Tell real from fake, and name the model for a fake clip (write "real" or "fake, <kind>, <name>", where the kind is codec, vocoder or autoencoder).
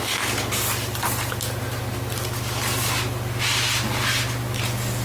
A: real